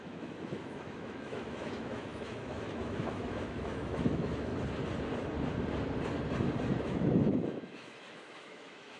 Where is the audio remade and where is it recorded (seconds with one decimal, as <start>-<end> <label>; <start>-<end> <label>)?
0.0-4.5 remade; 4.5-6.7 recorded; 6.7-9.0 remade